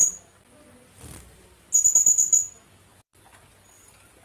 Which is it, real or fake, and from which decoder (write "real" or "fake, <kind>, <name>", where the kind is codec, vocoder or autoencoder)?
real